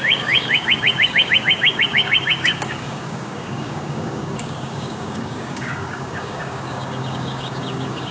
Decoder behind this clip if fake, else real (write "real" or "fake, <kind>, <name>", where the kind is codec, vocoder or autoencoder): fake, codec, DAC